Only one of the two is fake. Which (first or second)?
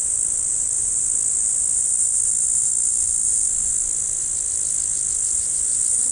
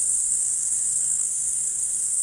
second